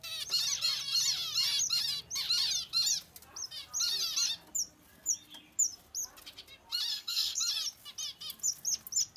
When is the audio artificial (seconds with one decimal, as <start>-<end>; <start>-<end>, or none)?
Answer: 6.9-7.4